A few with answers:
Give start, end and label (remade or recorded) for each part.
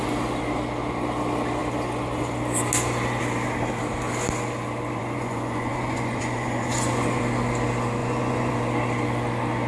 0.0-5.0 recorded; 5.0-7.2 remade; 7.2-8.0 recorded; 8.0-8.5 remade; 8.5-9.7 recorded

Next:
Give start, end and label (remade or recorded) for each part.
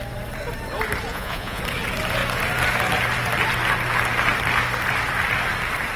0.0-1.1 recorded; 1.1-1.6 remade; 1.6-6.0 recorded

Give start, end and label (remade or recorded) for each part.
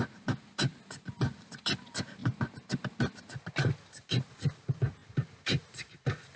0.0-6.4 recorded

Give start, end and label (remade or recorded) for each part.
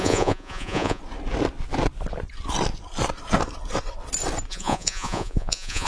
0.0-1.0 remade; 1.0-4.5 recorded; 4.5-5.9 remade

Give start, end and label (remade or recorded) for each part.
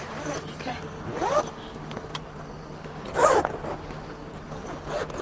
0.0-5.2 recorded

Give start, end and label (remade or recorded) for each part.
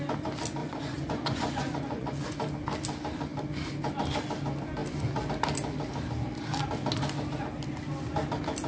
0.0-0.6 recorded; 0.6-2.4 remade; 2.4-8.7 recorded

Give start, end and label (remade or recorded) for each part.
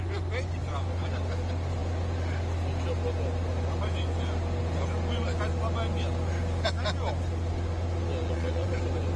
0.0-8.2 recorded; 8.2-8.7 remade; 8.7-9.2 recorded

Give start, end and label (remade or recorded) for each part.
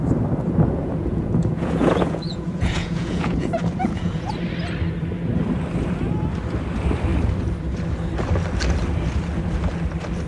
0.0-0.8 recorded; 0.8-4.3 remade; 4.3-10.3 recorded